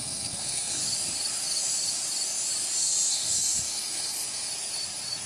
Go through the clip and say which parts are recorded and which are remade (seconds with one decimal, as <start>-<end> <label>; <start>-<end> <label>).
0.0-0.8 remade; 0.8-3.1 recorded; 3.1-4.5 remade; 4.5-5.3 recorded